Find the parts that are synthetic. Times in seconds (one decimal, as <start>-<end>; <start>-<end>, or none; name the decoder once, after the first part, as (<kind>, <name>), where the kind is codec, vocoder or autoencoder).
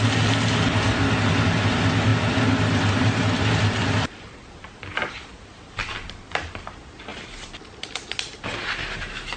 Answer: none